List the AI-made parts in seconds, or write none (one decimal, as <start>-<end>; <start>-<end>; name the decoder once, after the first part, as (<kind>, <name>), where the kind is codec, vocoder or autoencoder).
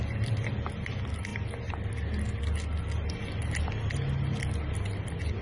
none